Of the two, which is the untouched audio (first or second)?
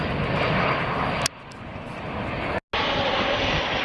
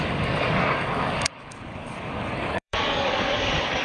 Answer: first